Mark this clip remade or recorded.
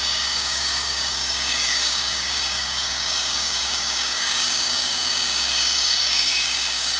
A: remade